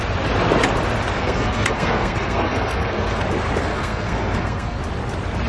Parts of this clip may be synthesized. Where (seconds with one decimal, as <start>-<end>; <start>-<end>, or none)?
1.2-3.2; 3.6-4.8